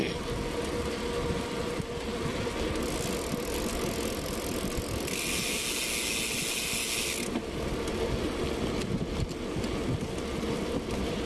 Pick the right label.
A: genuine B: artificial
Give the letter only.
A